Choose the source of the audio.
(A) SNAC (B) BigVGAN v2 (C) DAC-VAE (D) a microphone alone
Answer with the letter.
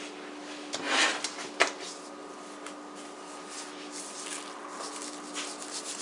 D